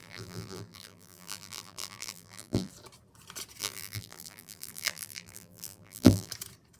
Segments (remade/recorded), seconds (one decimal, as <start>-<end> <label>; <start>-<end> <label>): 0.0-2.7 remade; 2.7-3.6 recorded; 3.6-6.3 remade; 6.3-6.8 recorded